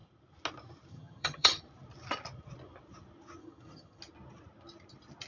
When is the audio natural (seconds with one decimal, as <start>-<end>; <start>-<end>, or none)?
0.0-0.9; 1.6-3.4; 4.0-5.3